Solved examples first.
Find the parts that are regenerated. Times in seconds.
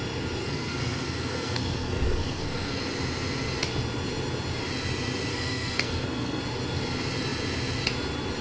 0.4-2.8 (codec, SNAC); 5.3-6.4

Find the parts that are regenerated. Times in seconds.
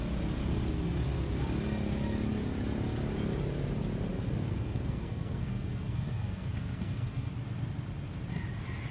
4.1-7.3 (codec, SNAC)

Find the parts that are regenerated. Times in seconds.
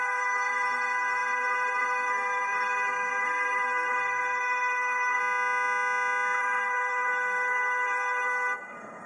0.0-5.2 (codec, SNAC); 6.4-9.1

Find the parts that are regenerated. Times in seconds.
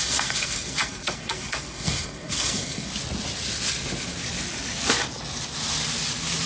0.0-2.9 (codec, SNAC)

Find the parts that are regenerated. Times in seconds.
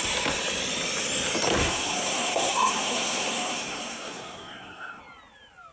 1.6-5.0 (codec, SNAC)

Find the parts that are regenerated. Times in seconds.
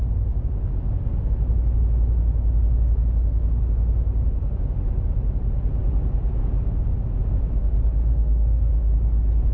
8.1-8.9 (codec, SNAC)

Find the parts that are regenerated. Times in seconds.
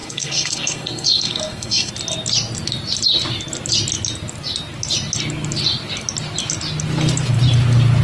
0.0-1.9 (codec, SNAC)